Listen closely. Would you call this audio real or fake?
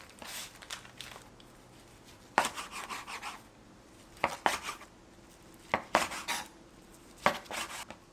real